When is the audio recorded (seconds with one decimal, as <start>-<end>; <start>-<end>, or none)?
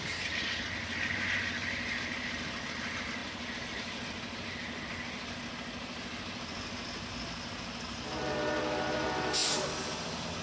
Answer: 0.0-10.4